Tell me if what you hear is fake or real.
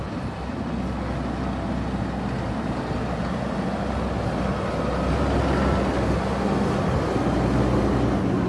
real